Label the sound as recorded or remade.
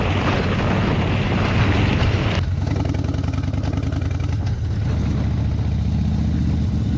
recorded